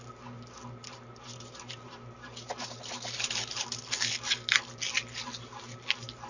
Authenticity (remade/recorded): recorded